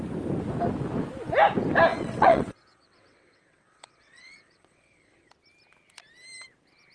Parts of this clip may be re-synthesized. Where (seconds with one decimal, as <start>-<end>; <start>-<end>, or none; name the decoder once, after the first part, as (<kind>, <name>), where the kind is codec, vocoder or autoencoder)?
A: 1.9-5.3 (vocoder, WaveNeXt)